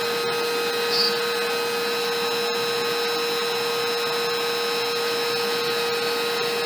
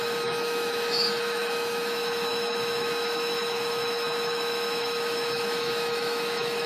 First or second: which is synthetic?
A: second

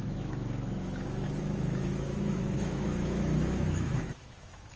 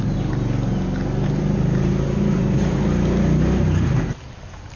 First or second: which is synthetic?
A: first